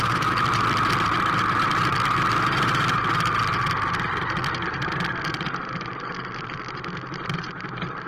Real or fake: real